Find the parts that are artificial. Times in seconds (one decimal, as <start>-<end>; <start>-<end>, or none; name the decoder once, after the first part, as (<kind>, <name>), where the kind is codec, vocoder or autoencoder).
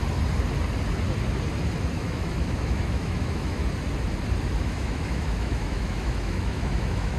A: 1.9-3.6 (autoencoder, DAC-VAE); 4.6-7.2